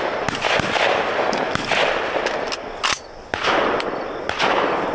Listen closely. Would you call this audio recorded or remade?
recorded